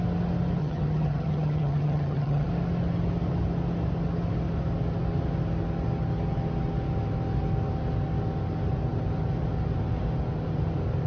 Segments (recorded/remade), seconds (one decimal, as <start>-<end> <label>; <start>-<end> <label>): 0.0-0.6 recorded; 0.6-2.5 remade; 2.5-11.1 recorded